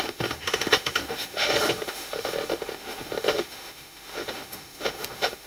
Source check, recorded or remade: remade